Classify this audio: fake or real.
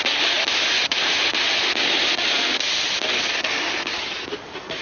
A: real